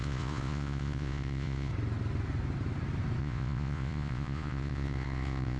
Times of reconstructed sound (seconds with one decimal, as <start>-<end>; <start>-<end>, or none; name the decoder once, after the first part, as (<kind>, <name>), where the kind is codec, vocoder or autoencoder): 0.0-1.7 (vocoder, Vocos); 3.2-5.6